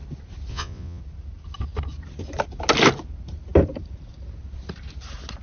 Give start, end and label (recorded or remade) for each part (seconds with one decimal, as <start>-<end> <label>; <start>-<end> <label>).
0.0-0.5 recorded; 0.5-1.0 remade; 1.0-5.4 recorded